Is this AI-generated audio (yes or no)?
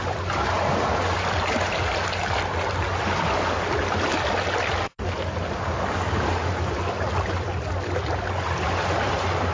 no